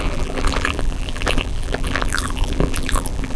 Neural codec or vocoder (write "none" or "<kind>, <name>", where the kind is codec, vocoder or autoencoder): vocoder, BigVGAN v2